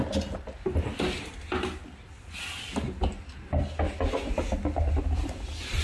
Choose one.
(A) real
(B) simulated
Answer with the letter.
A